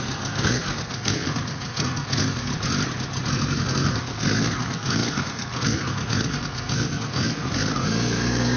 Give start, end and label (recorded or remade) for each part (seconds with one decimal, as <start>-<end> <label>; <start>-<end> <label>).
0.0-2.5 remade; 2.5-3.3 recorded; 3.3-8.6 remade